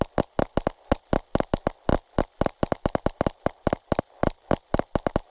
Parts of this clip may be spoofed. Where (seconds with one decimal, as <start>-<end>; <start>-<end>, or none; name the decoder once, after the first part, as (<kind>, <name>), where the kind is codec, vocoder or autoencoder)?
none